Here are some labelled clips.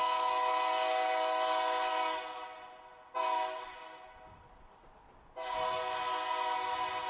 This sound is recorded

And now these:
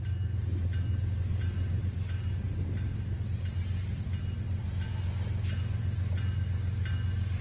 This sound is recorded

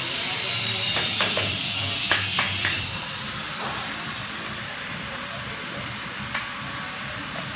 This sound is remade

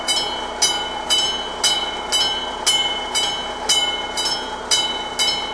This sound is recorded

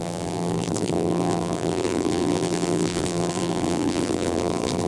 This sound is remade